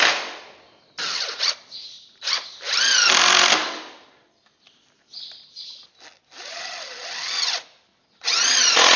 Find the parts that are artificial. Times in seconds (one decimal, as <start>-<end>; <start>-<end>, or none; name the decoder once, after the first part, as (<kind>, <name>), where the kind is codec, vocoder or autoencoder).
7.9-9.0 (vocoder, Vocos)